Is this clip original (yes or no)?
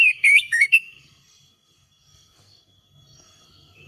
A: no